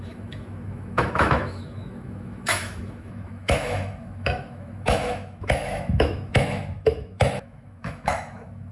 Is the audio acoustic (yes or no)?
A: no